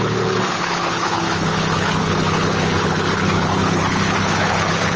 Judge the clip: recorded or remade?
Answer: remade